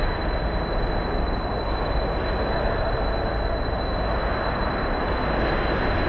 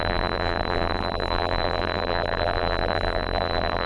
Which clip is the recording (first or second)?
first